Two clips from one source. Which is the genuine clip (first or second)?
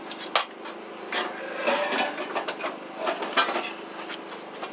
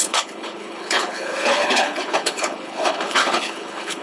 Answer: first